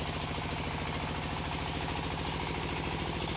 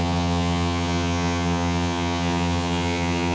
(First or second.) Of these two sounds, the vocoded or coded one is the second